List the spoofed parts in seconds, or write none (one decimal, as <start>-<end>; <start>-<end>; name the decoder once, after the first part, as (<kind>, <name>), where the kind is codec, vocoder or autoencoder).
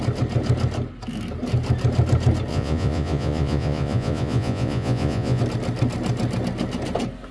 2.5-5.4 (vocoder, Vocos)